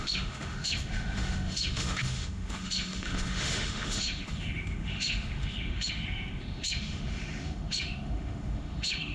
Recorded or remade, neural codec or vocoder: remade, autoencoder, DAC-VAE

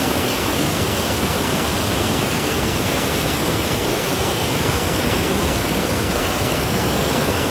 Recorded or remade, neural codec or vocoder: remade, codec, SNAC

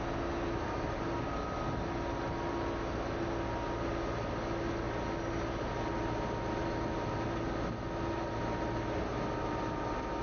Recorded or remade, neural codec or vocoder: recorded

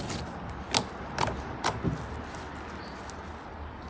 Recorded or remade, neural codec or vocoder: recorded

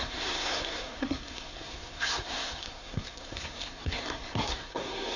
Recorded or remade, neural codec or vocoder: remade, codec, SNAC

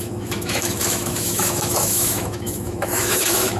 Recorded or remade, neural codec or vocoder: remade, autoencoder, DAC-VAE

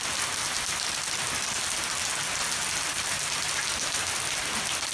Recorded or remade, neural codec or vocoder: recorded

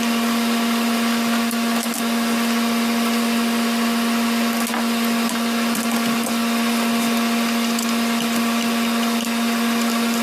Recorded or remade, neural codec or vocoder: recorded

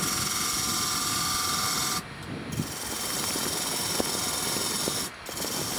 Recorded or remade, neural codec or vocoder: recorded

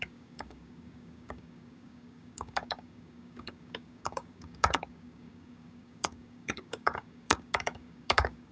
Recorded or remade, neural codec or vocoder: remade, codec, DAC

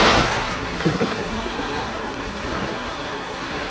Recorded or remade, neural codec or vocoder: remade, codec, SNAC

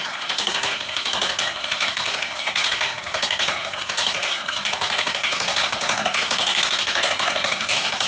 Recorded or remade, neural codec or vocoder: remade, codec, SNAC